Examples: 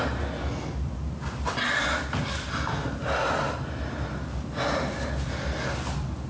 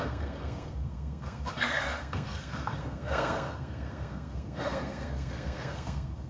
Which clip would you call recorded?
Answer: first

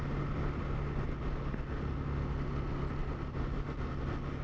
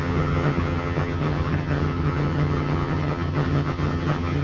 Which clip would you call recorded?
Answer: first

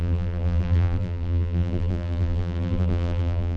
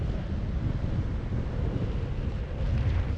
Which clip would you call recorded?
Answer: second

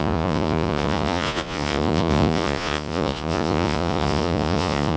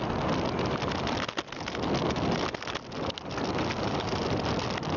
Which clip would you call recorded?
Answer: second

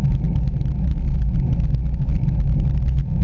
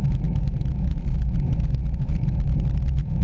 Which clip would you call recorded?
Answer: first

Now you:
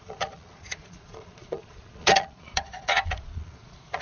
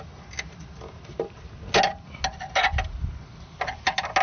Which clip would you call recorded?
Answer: second